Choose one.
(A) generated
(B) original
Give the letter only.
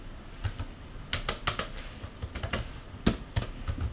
B